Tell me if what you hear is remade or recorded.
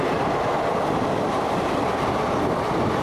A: recorded